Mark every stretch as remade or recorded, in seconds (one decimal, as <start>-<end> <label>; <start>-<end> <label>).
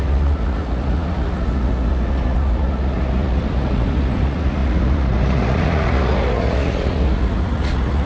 0.0-8.1 remade